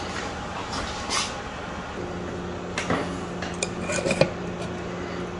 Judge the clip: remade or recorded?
recorded